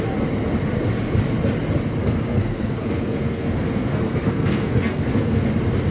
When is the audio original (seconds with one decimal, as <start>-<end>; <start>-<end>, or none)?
0.0-2.0; 5.5-5.9